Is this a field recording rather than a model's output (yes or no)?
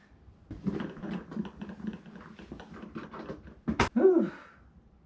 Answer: yes